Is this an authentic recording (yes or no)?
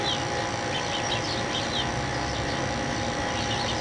yes